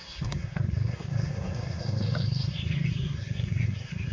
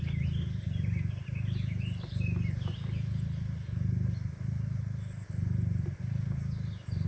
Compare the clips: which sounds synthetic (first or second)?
first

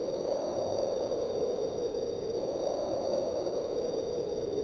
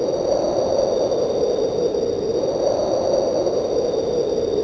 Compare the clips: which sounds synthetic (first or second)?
first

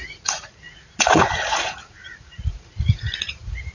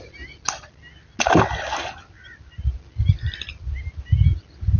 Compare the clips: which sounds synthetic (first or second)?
first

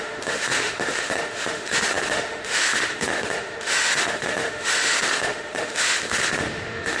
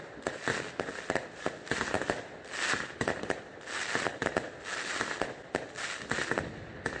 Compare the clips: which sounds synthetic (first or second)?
first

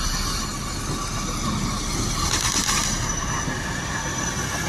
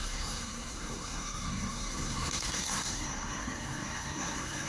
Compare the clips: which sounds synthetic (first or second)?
second